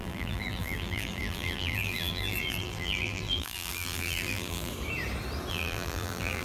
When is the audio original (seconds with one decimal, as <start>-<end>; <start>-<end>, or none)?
4.7-5.5